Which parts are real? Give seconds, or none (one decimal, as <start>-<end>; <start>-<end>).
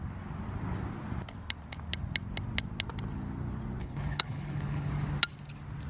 0.0-3.8; 4.9-5.9